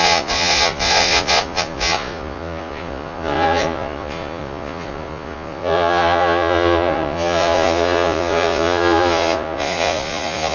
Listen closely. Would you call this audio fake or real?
fake